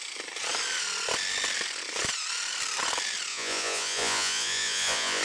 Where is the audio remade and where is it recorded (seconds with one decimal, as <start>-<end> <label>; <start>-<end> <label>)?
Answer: 0.0-3.3 recorded; 3.3-5.2 remade

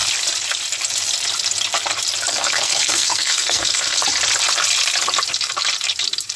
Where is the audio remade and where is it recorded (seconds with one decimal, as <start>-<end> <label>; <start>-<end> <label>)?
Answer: 0.0-2.3 recorded; 2.3-4.0 remade; 4.0-6.4 recorded

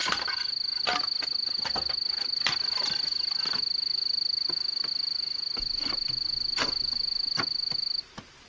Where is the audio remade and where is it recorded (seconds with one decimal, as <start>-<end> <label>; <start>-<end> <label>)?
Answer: 0.0-8.5 recorded